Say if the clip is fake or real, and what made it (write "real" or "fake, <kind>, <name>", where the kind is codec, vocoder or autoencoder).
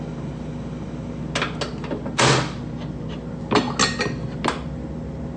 real